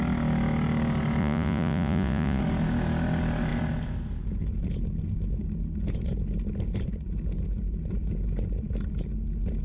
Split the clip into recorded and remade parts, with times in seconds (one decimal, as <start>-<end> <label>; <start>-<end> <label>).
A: 0.0-1.2 recorded; 1.2-2.4 remade; 2.4-9.6 recorded